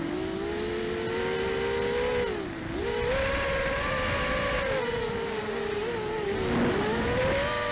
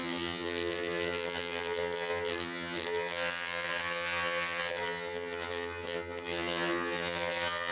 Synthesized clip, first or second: second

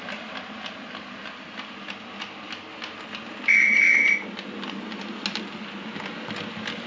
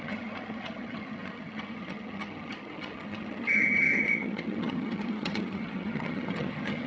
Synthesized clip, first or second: second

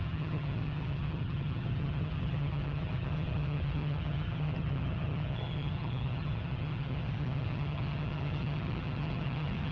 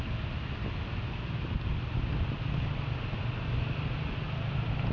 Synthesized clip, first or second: first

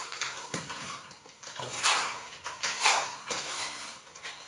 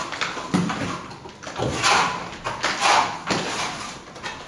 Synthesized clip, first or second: first